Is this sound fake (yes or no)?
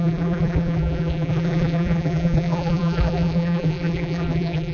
yes